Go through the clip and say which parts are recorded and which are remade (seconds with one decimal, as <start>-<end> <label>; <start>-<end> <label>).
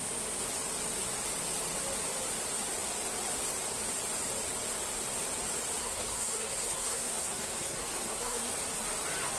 0.0-5.8 recorded; 5.8-8.5 remade; 8.5-9.4 recorded